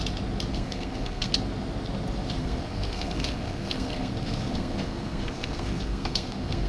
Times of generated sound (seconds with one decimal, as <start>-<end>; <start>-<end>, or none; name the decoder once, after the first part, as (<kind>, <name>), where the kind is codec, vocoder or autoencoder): 0.5-1.3 (codec, SNAC); 2.4-6.7